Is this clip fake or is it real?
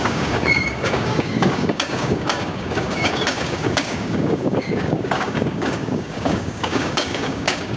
fake